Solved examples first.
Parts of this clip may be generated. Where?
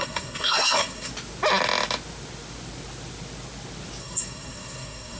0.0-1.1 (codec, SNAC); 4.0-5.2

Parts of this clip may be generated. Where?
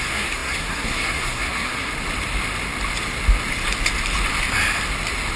0.0-1.9 (codec, SNAC)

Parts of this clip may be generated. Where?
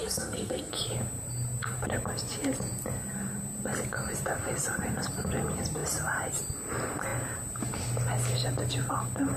0.0-0.7 (codec, SNAC)